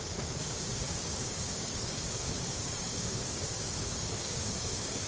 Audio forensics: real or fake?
fake